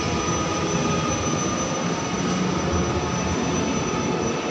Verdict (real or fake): real